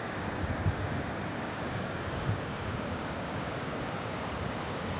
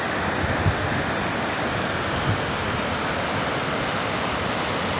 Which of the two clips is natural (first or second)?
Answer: second